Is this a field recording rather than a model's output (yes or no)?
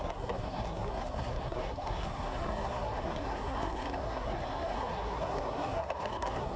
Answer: no